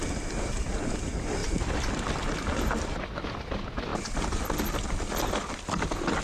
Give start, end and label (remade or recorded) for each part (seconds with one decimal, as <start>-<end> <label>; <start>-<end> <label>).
0.0-0.7 remade; 0.7-1.4 recorded; 1.4-2.5 remade; 2.5-3.9 recorded; 3.9-6.2 remade